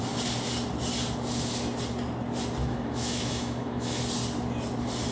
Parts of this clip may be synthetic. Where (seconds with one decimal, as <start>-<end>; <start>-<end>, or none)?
2.6-4.0